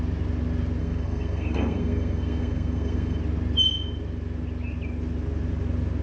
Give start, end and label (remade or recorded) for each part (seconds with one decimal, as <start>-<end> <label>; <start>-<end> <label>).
0.0-0.8 recorded; 0.8-3.2 remade; 3.2-6.0 recorded